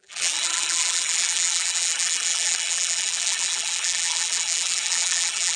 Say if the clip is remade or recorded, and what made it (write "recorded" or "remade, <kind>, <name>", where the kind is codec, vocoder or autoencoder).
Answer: remade, vocoder, BigVGAN v2